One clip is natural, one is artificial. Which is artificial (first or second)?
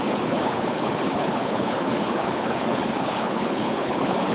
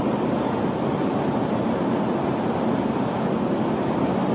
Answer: first